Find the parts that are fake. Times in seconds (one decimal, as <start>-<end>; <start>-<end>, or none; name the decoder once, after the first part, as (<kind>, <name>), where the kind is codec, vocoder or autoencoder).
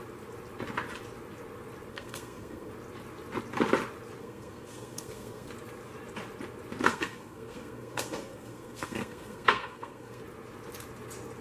1.9-2.7 (codec, SNAC); 4.2-5.5; 6.9-10.2